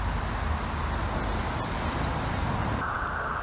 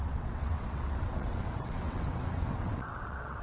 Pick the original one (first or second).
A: first